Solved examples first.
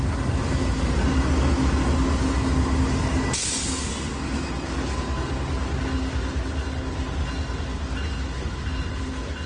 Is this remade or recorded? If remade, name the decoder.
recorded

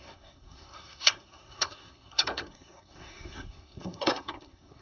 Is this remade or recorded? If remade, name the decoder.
remade, codec, SNAC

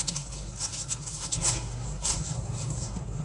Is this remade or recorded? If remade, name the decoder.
remade, codec, SNAC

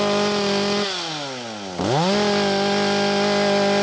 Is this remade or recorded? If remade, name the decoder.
recorded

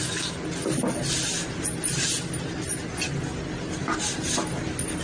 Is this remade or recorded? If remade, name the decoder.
recorded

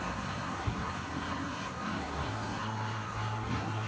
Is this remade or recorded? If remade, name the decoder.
remade, codec, SNAC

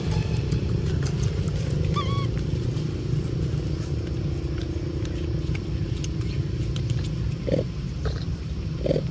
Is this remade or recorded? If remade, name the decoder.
recorded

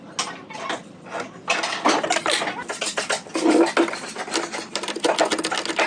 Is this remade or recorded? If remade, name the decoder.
recorded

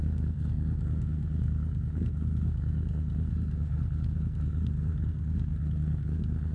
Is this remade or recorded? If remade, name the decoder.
remade, codec, SNAC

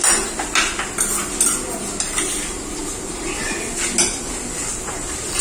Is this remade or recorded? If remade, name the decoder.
recorded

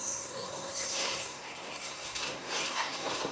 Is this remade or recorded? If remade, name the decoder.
remade, codec, SNAC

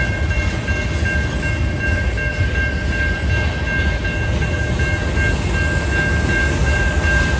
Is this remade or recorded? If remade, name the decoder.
recorded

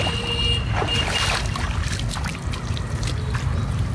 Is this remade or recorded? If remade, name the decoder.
recorded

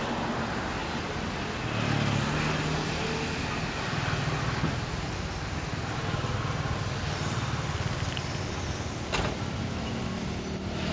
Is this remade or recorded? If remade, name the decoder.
recorded